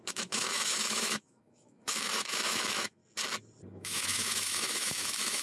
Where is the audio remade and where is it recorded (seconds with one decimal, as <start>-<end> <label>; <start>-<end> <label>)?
0.0-3.0 remade; 3.0-3.7 recorded; 3.7-5.4 remade